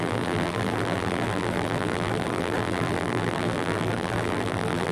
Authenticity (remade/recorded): remade